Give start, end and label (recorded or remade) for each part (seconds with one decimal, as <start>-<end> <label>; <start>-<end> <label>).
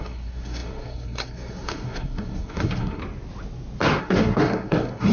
0.0-3.0 remade; 3.0-4.0 recorded; 4.0-5.1 remade